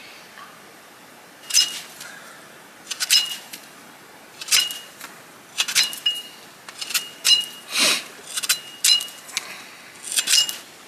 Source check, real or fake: real